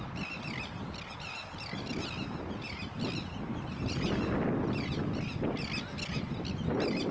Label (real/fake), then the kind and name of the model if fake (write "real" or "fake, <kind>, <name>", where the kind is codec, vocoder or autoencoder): real